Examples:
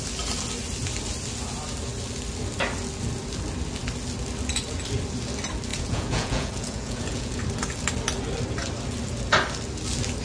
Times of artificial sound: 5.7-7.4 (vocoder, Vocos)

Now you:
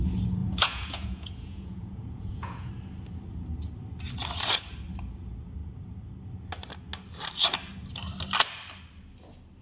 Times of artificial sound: 0.4-2.7 (vocoder, Vocos)

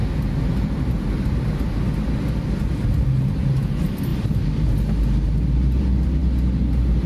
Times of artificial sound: none

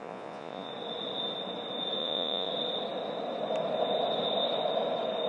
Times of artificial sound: 0.0-0.7 (vocoder, Vocos); 2.0-2.5